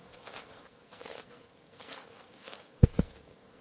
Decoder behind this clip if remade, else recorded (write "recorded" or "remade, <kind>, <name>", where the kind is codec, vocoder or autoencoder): remade, codec, SNAC